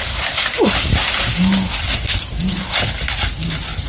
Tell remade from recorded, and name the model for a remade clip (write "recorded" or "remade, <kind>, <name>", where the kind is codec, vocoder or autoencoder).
recorded